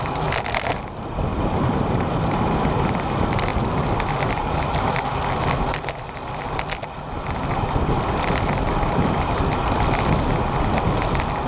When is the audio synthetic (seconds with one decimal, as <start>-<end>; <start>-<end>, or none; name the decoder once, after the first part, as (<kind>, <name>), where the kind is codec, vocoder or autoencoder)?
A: 1.3-2.7 (vocoder, BigVGAN v2)